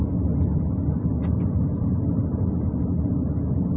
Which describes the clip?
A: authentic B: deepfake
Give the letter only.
A